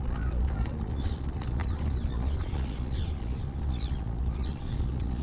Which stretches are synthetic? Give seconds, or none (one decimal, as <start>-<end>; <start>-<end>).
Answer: 0.0-5.2